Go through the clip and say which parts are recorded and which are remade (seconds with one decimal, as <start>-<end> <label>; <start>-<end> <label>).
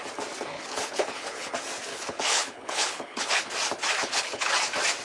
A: 0.0-0.5 recorded; 0.5-1.5 remade; 1.5-1.9 recorded; 1.9-3.4 remade; 3.4-4.0 recorded; 4.0-4.5 remade; 4.5-5.0 recorded